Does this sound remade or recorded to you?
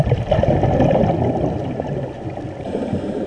recorded